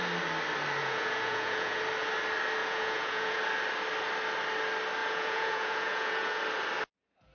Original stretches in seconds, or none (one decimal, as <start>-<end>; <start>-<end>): 0.0-0.8; 1.8-2.6; 3.4-5.0; 6.4-7.3